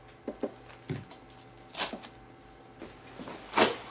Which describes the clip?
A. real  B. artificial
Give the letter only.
A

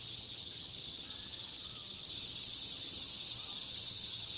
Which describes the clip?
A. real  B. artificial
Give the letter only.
B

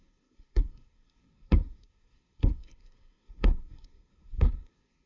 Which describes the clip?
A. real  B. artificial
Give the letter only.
B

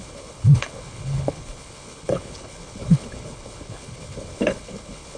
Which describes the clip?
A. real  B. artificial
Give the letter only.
B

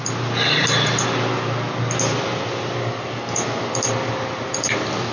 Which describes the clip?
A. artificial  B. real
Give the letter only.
B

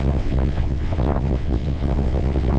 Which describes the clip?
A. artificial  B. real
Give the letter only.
A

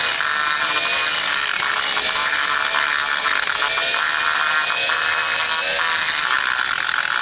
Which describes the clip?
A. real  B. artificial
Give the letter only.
A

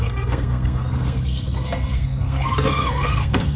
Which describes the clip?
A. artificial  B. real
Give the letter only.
A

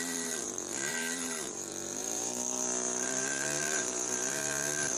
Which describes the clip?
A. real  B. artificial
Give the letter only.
B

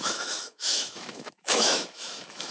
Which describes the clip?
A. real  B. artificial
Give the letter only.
B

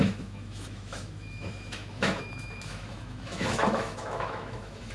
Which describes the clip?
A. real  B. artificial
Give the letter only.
B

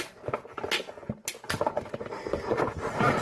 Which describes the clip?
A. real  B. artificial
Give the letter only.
A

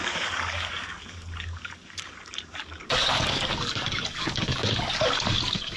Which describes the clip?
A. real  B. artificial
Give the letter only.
B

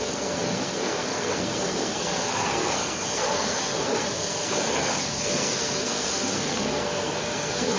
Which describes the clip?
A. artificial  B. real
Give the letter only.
A